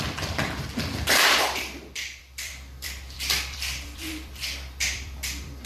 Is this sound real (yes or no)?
no